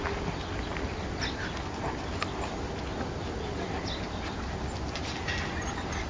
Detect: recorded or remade recorded